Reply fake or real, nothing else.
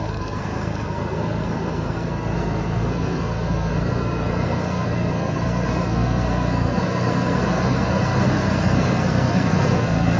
fake